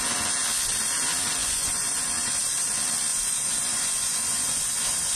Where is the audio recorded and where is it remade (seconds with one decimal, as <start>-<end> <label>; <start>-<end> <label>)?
0.0-1.4 recorded; 1.4-2.1 remade; 2.1-3.1 recorded; 3.1-4.7 remade; 4.7-5.2 recorded